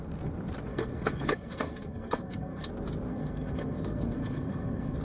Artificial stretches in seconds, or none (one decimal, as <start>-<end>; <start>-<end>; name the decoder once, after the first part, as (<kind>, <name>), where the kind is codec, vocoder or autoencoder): 0.7-2.7 (codec, SNAC); 3.1-5.0